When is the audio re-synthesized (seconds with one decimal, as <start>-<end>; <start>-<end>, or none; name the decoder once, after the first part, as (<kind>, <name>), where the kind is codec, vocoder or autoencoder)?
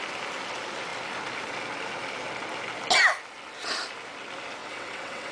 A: 4.6-5.3 (vocoder, WaveNeXt)